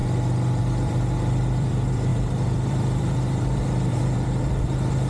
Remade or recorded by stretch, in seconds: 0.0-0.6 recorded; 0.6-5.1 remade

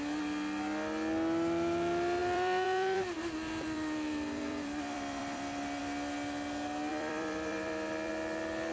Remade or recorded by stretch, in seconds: 0.0-2.2 recorded; 2.2-5.8 remade; 5.8-6.9 recorded; 6.9-8.1 remade; 8.1-8.7 recorded